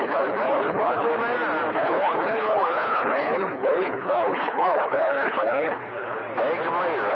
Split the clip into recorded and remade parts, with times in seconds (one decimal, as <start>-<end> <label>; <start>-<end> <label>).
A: 0.0-1.1 remade; 1.1-1.7 recorded; 1.7-6.2 remade; 6.2-7.1 recorded